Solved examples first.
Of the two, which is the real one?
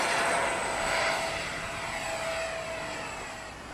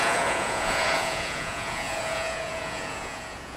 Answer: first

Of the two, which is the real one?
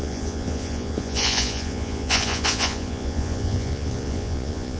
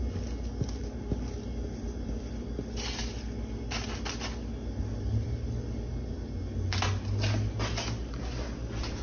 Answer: second